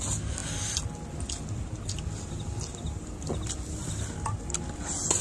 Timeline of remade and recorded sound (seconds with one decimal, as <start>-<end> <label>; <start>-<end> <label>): 0.0-5.2 recorded